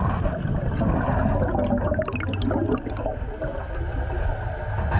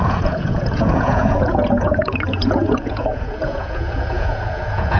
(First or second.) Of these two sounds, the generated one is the second